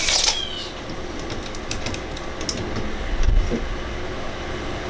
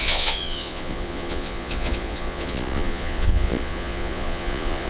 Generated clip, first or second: second